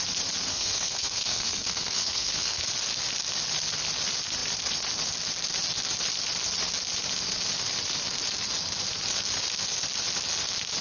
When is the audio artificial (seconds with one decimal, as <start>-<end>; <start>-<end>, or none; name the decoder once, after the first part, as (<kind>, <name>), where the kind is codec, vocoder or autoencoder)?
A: 0.5-2.6 (codec, SNAC)